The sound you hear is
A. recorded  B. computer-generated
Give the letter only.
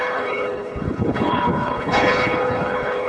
B